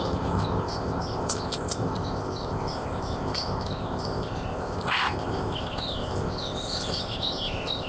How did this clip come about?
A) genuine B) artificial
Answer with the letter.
B